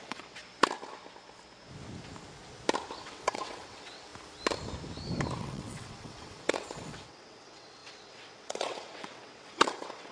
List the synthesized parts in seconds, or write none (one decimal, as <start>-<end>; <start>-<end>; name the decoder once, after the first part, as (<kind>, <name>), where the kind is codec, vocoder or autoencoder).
0.0-0.4 (vocoder, WaveNeXt); 3.0-4.1; 5.4-10.1